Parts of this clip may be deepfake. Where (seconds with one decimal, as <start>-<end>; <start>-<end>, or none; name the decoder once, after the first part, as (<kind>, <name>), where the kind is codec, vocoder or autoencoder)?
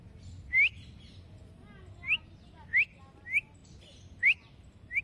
3.6-5.0 (vocoder, BigVGAN v2)